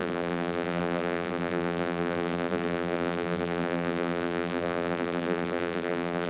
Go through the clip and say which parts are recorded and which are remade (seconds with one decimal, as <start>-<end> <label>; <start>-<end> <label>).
0.0-6.3 remade